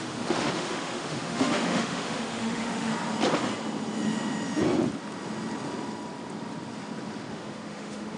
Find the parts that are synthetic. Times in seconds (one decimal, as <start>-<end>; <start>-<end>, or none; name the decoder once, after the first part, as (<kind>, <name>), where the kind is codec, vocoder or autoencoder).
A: 0.0-2.9 (autoencoder, DAC-VAE); 7.3-8.2